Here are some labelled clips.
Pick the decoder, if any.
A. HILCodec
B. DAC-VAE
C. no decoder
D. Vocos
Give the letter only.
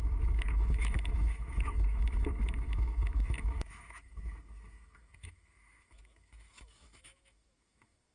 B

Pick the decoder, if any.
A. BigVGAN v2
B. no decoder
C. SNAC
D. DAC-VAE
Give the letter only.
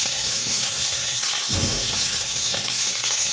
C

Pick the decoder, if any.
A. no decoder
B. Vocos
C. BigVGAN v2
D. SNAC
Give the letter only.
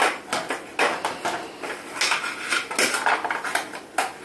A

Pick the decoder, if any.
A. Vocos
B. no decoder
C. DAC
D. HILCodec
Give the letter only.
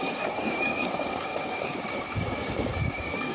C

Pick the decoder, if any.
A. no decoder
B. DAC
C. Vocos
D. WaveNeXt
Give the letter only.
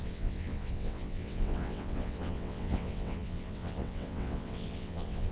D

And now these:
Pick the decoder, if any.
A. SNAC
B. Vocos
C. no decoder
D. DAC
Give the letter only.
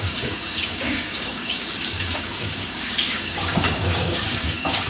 D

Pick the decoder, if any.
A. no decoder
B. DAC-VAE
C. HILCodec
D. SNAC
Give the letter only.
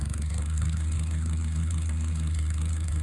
D